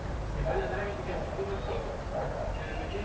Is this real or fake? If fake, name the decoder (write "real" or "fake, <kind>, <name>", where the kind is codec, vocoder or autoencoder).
real